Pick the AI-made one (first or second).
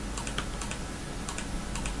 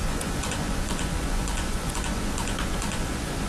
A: second